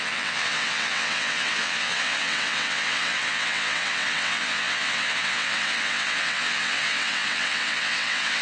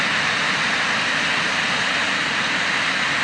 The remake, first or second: first